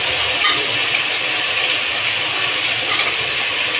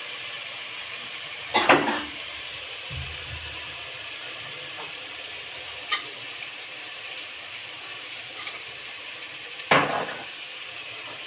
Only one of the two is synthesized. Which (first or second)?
second